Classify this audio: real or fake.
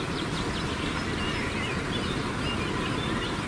real